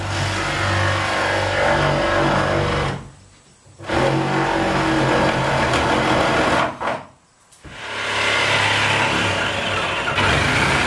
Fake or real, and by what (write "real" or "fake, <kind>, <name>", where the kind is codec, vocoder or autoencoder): real